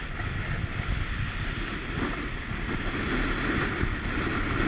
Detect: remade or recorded remade